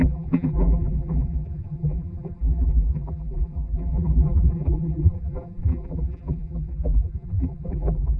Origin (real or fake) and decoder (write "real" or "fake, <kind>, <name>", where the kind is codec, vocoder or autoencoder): fake, vocoder, BigVGAN v2